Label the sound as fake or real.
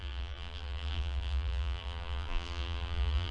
fake